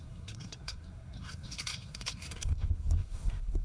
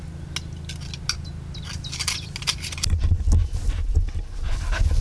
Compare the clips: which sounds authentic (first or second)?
second